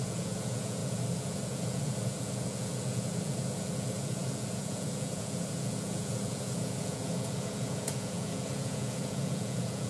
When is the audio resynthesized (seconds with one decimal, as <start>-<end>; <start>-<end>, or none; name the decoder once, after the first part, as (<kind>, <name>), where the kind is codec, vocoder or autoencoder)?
0.0-9.9 (vocoder, Vocos)